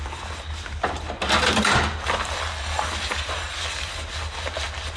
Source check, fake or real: real